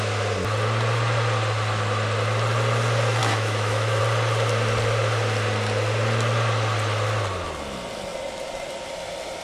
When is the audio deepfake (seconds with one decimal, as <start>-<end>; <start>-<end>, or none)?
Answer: 3.2-4.0